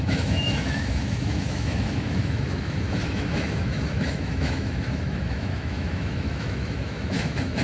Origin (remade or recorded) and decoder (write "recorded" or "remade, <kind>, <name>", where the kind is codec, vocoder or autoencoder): remade, autoencoder, DAC-VAE